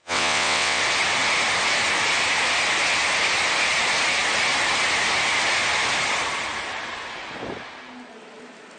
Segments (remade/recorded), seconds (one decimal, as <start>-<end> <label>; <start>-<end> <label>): 0.0-0.8 remade; 0.8-8.8 recorded